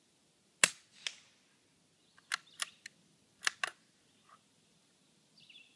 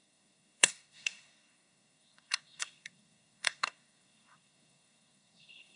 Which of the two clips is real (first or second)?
first